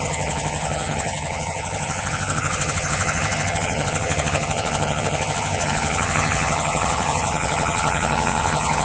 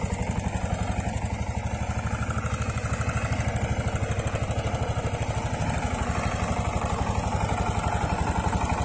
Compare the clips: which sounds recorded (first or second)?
second